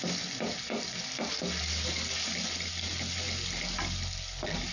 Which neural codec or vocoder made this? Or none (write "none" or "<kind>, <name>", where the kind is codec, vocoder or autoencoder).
none